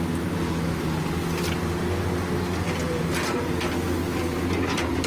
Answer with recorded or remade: recorded